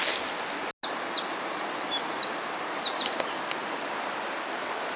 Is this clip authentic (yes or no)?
yes